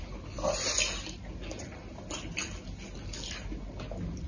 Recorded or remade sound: recorded